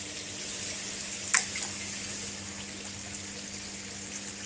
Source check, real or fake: real